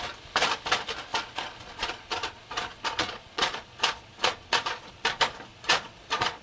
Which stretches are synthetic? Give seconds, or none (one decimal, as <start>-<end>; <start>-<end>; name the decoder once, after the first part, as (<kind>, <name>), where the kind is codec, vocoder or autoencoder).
1.1-4.9 (vocoder, Vocos); 5.5-6.4